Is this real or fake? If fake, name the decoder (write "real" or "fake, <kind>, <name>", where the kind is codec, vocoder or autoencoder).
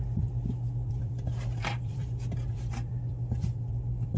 fake, vocoder, BigVGAN v2